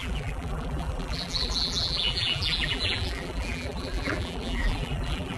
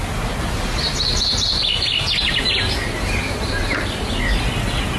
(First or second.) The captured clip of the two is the second